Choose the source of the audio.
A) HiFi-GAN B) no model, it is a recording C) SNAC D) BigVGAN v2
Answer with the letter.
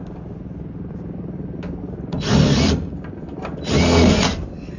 B